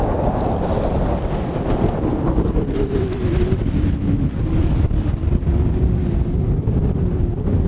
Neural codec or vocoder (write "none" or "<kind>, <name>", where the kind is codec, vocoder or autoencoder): none